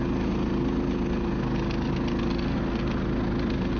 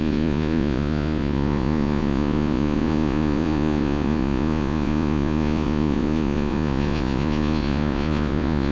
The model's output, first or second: second